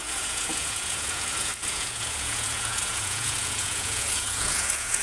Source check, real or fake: fake